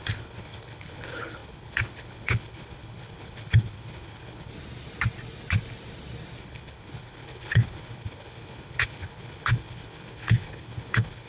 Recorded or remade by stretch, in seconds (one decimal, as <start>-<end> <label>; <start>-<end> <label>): 0.0-4.5 remade; 4.5-6.4 recorded; 6.4-11.3 remade